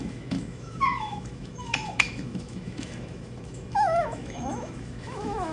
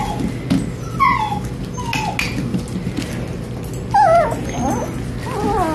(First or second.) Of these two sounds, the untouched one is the second